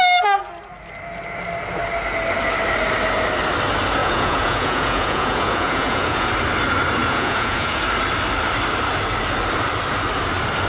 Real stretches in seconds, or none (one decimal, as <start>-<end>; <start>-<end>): 0.0-4.0; 6.3-7.0; 7.8-10.7